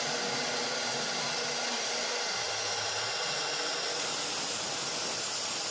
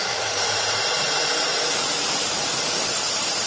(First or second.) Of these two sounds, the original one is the first